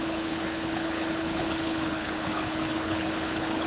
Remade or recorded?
remade